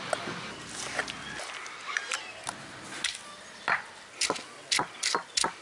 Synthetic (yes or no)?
no